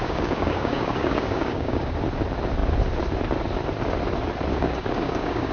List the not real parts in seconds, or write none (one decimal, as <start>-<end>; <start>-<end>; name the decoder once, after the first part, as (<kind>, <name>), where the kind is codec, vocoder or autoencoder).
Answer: 0.0-1.9 (codec, DAC); 4.5-5.5